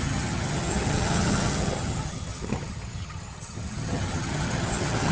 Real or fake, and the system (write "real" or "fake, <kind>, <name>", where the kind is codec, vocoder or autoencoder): fake, vocoder, HiFi-GAN